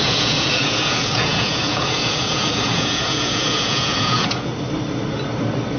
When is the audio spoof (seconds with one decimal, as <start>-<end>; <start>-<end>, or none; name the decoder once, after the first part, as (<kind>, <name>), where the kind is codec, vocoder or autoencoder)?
0.0-4.5 (vocoder, Vocos)